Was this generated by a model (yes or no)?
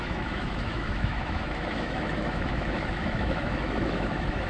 yes